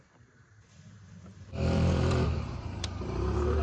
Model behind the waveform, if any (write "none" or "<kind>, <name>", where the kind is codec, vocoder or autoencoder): vocoder, BigVGAN v2